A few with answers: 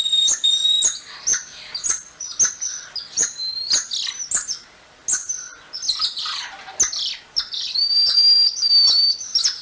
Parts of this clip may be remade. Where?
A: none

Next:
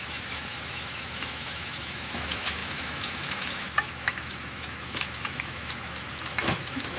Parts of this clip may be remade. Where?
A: 0.0-7.0 (autoencoder, DAC-VAE)

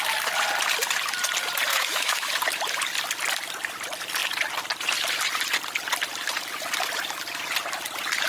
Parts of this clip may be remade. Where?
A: 1.7-2.3 (autoencoder, DAC-VAE)

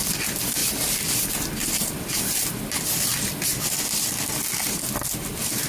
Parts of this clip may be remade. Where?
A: 0.6-1.3 (vocoder, BigVGAN v2)

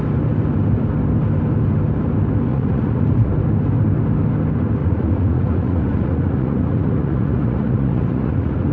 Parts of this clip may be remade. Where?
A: 2.5-3.3 (vocoder, Vocos); 4.8-8.7

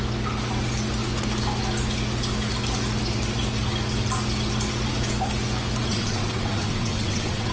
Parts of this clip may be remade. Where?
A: 5.9-7.5 (vocoder, WaveNeXt)

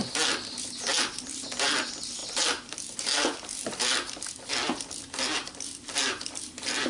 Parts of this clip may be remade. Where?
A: none